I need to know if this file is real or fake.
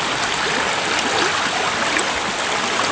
real